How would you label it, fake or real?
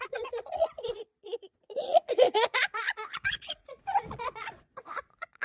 fake